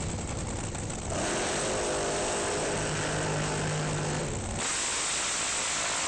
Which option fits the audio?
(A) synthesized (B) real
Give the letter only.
B